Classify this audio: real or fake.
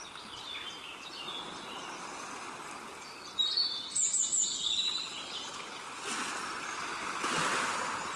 real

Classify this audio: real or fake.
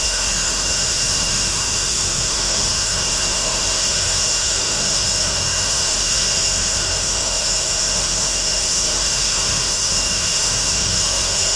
fake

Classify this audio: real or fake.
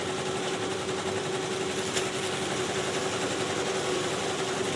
real